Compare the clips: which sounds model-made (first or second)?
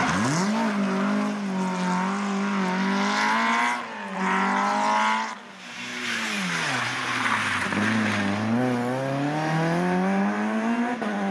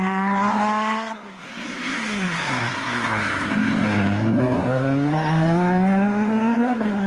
second